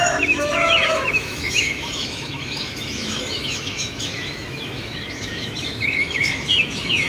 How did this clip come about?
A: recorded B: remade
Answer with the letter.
B